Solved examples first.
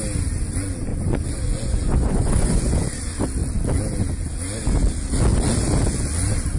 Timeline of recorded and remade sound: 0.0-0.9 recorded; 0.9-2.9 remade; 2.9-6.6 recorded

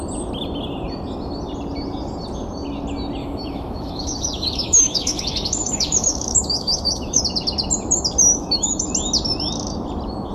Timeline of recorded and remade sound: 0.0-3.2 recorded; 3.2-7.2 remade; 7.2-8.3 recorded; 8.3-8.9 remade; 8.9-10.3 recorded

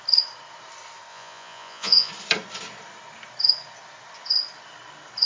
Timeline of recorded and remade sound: 0.0-1.1 recorded; 1.1-2.1 remade; 2.1-5.3 recorded